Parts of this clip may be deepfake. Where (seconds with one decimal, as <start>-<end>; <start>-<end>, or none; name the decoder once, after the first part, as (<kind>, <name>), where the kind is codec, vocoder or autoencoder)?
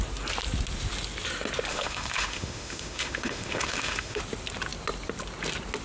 1.7-4.2 (autoencoder, DAC-VAE)